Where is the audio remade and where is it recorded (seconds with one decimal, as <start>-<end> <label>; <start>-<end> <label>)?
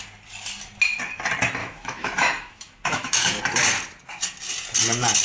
0.0-1.6 recorded; 1.6-3.4 remade; 3.4-5.2 recorded